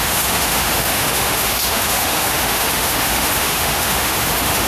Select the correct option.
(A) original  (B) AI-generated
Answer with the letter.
B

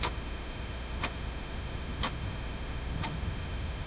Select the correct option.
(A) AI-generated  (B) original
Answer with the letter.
A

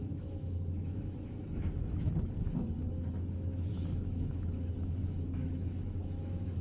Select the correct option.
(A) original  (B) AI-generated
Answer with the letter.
B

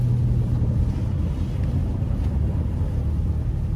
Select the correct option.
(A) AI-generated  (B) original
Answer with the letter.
B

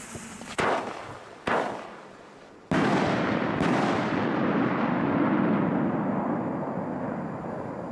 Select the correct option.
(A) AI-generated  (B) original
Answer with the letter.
B